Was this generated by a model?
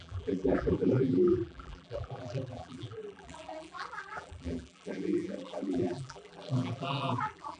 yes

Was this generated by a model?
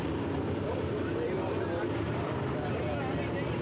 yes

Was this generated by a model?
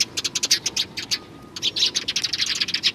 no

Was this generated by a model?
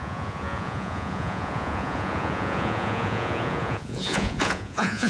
yes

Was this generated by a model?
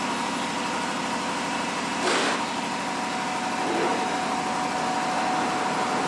no